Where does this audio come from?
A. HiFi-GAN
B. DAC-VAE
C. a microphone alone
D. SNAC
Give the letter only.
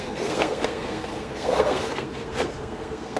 D